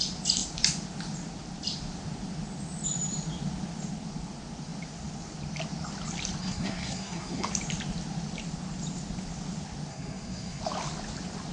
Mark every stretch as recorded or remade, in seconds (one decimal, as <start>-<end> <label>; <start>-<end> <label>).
0.0-6.4 recorded; 6.4-7.5 remade; 7.5-9.9 recorded; 9.9-10.6 remade; 10.6-11.5 recorded